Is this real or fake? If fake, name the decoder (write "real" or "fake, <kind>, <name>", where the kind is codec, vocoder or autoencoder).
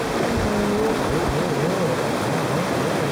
real